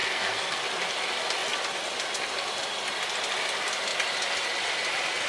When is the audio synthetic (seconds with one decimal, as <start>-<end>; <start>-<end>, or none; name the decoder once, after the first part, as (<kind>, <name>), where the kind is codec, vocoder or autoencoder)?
0.0-0.6 (codec, SNAC)